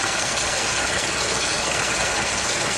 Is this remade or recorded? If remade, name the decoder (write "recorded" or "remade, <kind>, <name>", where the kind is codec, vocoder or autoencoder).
remade, codec, SNAC